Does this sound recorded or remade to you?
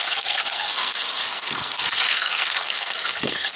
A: remade